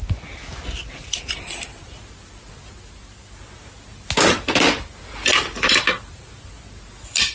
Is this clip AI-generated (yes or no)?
no